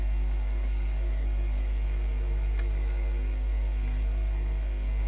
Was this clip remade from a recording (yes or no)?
yes